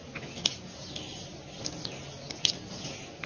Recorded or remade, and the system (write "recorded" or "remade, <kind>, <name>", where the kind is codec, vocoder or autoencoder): recorded